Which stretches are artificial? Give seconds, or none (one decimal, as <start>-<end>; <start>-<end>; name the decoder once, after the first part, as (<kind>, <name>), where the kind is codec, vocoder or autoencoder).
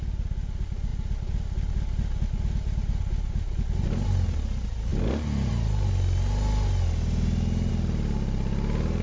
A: none